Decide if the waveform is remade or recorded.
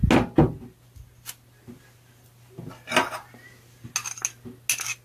recorded